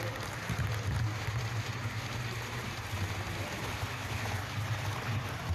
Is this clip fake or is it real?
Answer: real